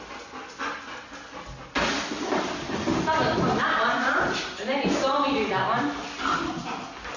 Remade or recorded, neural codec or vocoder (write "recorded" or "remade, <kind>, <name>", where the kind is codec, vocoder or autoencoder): recorded